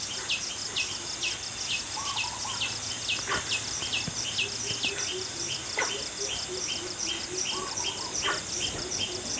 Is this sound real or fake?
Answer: real